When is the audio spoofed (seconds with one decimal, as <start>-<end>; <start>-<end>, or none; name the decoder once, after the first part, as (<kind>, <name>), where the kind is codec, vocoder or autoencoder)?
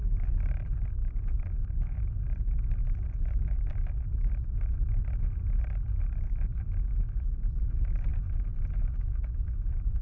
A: none